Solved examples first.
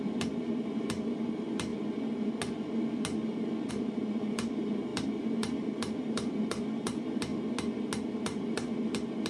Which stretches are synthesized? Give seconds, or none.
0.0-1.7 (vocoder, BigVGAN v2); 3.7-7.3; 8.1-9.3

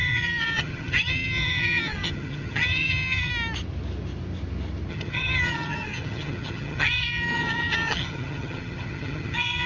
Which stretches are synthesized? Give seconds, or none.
0.0-3.3 (vocoder, HiFi-GAN); 4.9-9.7

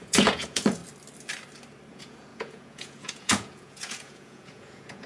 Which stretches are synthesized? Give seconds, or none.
0.0-0.8 (vocoder, Vocos); 1.9-5.1

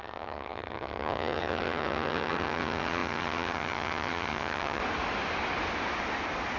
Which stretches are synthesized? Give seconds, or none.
0.0-4.8 (vocoder, HiFi-GAN)

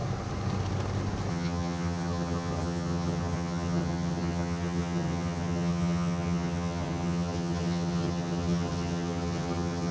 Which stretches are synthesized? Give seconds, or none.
1.3-9.9 (vocoder, HiFi-GAN)

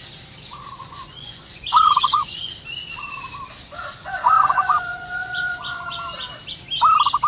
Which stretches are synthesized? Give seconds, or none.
0.8-2.5 (vocoder, Vocos); 3.9-5.9

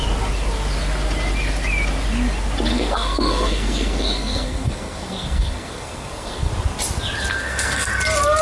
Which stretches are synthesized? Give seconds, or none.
2.7-6.5 (codec, SNAC); 7.3-7.9

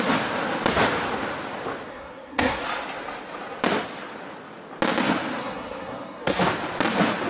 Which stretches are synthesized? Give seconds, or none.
1.9-2.6 (codec, SNAC); 5.4-6.4